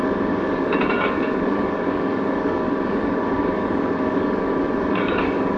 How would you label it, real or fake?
fake